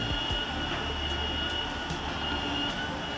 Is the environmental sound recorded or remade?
recorded